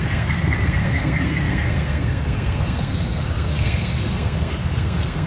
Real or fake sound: fake